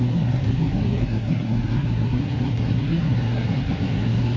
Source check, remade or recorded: remade